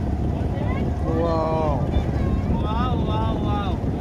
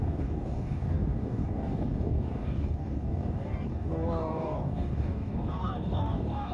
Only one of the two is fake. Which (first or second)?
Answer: second